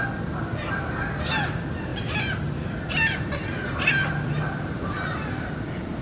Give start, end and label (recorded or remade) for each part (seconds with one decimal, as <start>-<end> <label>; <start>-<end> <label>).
0.0-1.9 recorded; 1.9-5.5 remade; 5.5-6.0 recorded